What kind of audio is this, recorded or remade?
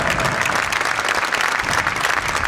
recorded